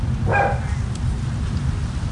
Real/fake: real